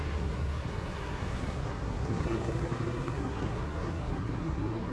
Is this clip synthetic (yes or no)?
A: yes